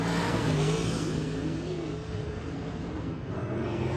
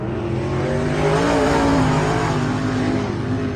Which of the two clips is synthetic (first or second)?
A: first